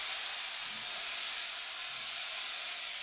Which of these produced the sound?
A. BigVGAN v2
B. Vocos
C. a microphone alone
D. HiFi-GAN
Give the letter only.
C